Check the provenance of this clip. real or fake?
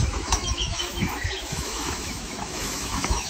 fake